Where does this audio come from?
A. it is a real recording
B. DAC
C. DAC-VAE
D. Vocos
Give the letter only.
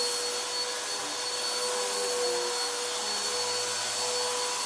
A